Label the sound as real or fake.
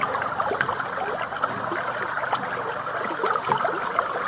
real